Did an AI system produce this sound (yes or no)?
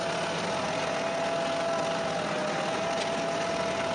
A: no